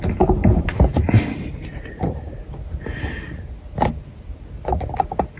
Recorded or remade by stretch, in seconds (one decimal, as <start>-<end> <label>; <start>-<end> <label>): 0.0-0.4 recorded; 0.4-2.8 remade; 2.8-5.4 recorded